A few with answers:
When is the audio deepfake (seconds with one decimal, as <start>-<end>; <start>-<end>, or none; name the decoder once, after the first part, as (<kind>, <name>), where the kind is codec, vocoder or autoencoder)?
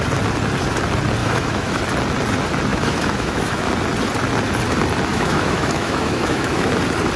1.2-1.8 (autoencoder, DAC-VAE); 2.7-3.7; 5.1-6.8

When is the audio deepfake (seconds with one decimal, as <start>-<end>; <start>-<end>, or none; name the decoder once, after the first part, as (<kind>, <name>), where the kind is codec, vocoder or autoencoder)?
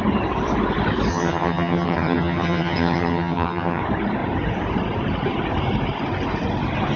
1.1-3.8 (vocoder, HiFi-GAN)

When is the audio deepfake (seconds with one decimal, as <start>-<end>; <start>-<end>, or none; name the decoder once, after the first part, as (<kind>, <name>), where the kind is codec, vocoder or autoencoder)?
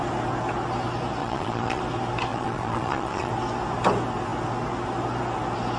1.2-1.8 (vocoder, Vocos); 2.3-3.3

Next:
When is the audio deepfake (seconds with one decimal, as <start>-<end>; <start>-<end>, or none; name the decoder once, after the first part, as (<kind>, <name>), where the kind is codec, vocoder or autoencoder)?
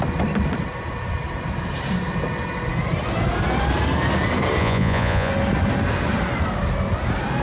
4.6-5.3 (vocoder, Vocos)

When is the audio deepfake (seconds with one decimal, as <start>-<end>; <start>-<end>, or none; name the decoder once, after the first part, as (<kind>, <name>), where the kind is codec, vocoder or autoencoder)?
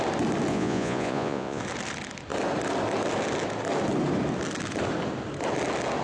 0.5-1.6 (vocoder, Vocos)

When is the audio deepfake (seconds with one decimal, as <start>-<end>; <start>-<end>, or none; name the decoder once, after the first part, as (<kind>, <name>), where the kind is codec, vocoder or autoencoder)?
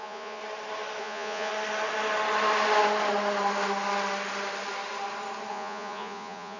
0.0-0.4 (vocoder, Vocos); 1.0-1.5; 5.5-6.6